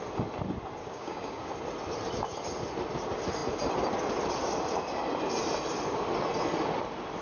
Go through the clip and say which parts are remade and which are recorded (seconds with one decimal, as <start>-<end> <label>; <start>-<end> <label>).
0.0-0.8 recorded; 0.8-1.5 remade; 1.5-7.2 recorded